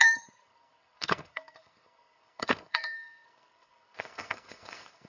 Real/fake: fake